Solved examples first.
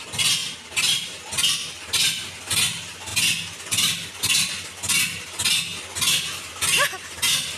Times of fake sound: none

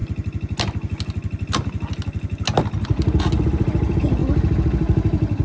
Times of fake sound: 3.2-4.2

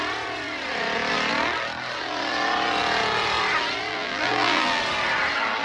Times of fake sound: 3.9-4.8

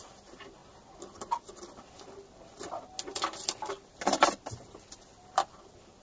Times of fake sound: 0.0-0.6; 3.7-6.0

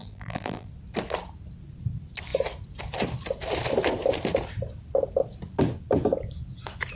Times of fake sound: 0.0-0.7